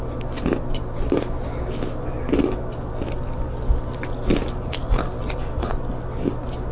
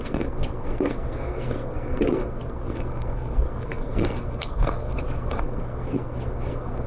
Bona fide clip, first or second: first